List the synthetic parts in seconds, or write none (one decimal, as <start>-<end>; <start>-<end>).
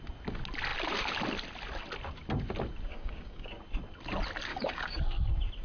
2.9-3.5; 4.5-5.0